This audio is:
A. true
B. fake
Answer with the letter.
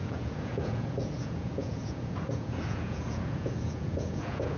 B